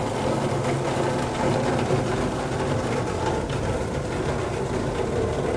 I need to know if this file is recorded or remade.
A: recorded